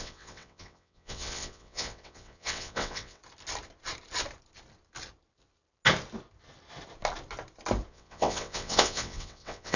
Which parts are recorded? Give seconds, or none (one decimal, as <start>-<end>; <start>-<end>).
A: 3.2-7.9